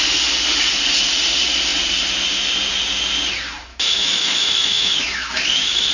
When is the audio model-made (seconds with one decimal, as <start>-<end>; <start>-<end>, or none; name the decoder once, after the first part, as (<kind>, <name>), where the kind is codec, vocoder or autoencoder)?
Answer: 3.7-5.9 (autoencoder, DAC-VAE)